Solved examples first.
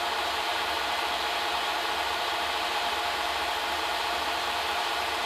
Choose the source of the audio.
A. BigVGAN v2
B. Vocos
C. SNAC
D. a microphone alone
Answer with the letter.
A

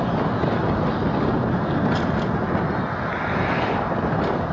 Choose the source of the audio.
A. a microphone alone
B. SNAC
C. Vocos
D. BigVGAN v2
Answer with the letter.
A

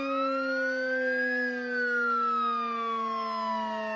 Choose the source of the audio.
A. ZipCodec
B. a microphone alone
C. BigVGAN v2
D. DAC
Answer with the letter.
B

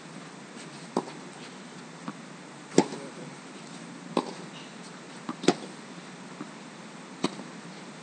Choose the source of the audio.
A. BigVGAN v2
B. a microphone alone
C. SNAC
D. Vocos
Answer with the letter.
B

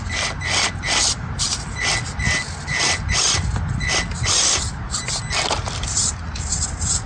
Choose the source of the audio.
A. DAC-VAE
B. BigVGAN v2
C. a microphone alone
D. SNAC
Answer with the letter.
C